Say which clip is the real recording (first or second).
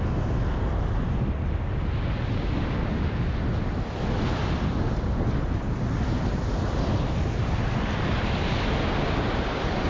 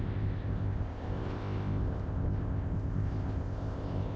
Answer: first